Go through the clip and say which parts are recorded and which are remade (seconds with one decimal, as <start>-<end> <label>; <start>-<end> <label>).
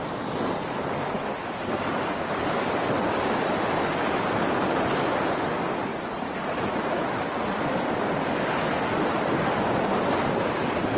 0.0-5.9 recorded; 5.9-7.1 remade; 7.1-11.0 recorded